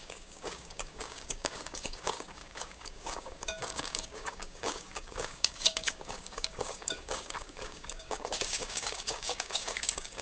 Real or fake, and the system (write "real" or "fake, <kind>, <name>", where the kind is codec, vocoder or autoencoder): fake, codec, DAC